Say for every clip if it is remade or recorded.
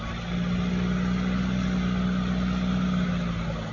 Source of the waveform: recorded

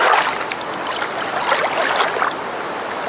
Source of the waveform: recorded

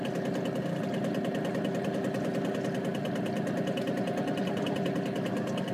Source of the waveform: recorded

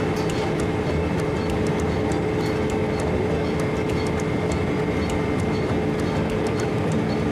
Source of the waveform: recorded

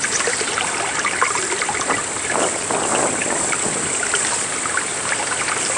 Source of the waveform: recorded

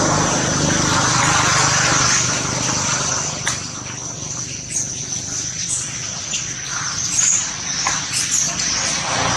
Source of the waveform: recorded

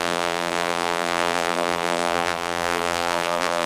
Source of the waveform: remade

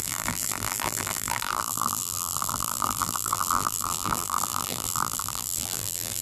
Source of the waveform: remade